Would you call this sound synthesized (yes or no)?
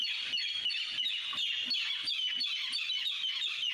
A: no